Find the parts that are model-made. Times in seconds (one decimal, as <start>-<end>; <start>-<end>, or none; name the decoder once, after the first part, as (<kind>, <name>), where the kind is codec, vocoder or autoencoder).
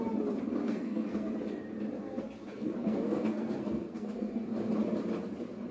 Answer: 0.6-1.3 (codec, SNAC); 2.0-4.7